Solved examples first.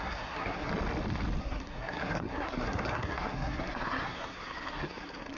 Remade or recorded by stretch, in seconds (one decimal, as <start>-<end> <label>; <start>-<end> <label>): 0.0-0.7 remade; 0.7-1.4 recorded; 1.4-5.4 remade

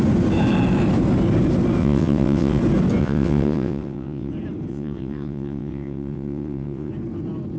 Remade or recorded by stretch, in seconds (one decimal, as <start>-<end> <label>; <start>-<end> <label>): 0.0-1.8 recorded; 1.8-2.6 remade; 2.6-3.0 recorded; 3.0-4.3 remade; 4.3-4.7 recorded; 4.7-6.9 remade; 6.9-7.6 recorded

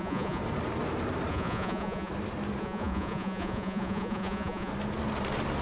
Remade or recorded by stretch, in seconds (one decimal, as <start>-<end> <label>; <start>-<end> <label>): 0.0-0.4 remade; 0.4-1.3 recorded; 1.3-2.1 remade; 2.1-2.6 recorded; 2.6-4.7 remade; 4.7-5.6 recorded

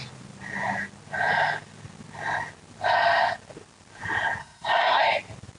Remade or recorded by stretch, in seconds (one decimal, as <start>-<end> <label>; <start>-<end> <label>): 0.0-4.4 recorded; 4.4-5.0 remade; 5.0-5.6 recorded

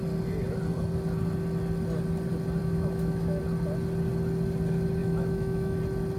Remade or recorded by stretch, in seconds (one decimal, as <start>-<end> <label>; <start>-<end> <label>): 0.0-2.6 recorded; 2.6-3.4 remade; 3.4-5.0 recorded; 5.0-5.8 remade; 5.8-6.2 recorded